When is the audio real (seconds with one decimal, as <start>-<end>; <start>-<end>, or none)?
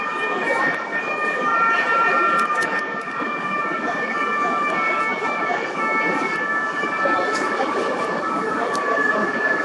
1.5-2.1